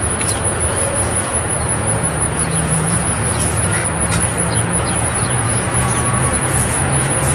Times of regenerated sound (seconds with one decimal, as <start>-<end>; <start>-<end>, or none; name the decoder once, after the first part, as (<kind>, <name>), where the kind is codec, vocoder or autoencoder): 0.0-3.8 (vocoder, Vocos); 4.8-7.3